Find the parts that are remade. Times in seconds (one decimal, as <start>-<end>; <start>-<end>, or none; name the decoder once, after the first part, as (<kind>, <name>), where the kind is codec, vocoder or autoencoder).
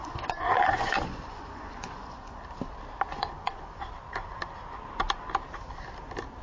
0.0-2.4 (vocoder, Vocos); 3.1-3.8